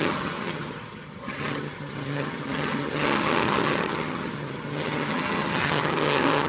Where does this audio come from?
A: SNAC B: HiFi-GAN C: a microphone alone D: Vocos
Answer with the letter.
B